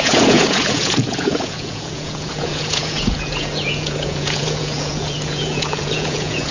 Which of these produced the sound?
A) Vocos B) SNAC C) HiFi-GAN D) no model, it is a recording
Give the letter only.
A